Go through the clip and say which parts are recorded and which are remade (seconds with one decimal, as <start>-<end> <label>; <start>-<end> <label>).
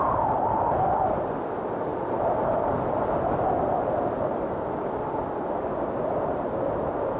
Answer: 0.0-7.2 recorded